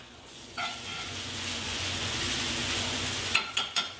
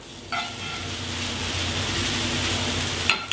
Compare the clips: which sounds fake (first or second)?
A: first